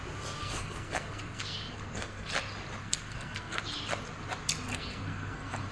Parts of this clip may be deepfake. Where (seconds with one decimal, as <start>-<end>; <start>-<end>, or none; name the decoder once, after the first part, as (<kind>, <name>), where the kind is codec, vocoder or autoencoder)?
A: 0.4-2.3 (codec, SNAC); 2.8-3.6; 4.7-5.7